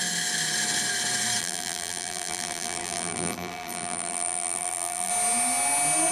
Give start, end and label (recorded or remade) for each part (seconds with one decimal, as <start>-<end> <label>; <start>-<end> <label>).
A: 0.0-1.4 recorded; 1.4-5.1 remade; 5.1-6.1 recorded